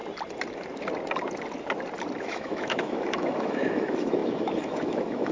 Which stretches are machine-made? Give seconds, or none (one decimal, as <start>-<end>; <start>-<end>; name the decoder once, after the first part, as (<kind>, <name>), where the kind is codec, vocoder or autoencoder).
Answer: 2.2-5.3 (autoencoder, DAC-VAE)